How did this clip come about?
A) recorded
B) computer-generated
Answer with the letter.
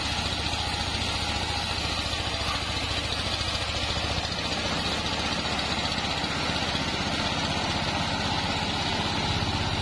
A